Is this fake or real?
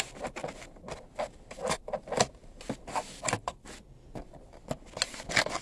real